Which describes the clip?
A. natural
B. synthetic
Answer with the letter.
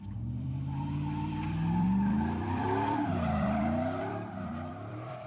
B